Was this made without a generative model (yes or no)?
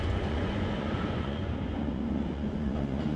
no